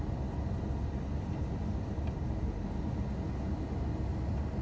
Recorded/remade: recorded